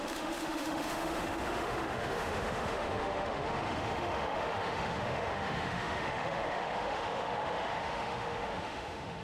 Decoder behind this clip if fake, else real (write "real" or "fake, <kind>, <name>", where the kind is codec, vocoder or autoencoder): fake, autoencoder, DAC-VAE